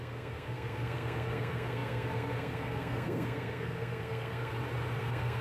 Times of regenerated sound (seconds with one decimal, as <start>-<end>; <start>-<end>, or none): 0.0-4.5; 5.0-5.4